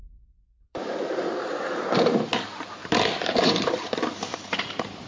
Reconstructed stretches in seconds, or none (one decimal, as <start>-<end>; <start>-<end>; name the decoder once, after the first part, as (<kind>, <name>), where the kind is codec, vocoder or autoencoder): 0.7-2.2 (vocoder, BigVGAN v2); 2.8-3.7; 4.3-5.1